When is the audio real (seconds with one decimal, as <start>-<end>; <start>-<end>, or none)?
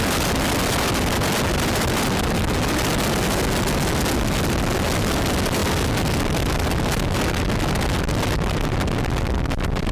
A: 0.0-9.9